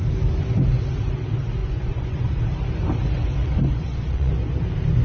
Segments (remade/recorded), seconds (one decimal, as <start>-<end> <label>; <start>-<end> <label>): 0.0-1.6 recorded; 1.6-2.4 remade; 2.4-3.4 recorded; 3.4-4.3 remade; 4.3-5.0 recorded